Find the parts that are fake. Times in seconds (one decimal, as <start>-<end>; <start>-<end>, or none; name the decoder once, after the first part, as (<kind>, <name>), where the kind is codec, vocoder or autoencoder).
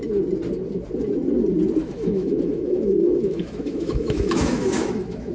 1.8-5.3 (autoencoder, DAC-VAE)